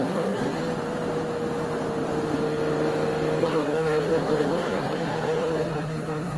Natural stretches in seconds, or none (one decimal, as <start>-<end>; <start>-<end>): 0.6-3.4